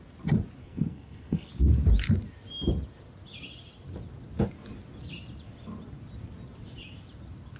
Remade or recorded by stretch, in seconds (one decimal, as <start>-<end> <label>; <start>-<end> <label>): 0.0-0.6 recorded; 0.6-1.5 remade; 1.5-7.6 recorded